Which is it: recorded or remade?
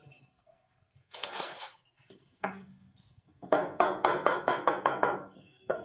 remade